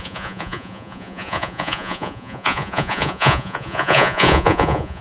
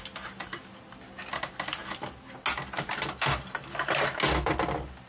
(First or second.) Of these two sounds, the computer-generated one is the first